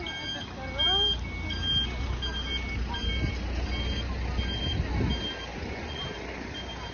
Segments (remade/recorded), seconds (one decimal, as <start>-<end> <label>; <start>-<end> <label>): 0.0-5.5 recorded; 5.5-6.0 remade; 6.0-6.9 recorded